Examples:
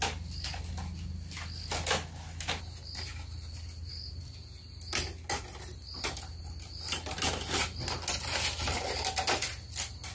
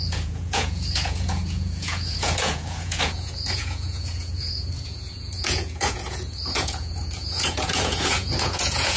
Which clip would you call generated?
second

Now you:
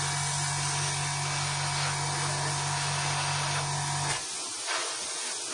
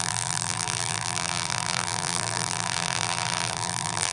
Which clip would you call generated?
second